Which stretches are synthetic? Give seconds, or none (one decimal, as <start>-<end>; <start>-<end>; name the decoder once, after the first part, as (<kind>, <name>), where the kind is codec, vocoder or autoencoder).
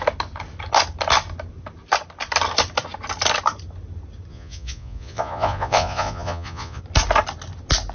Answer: 4.3-6.8 (vocoder, Vocos)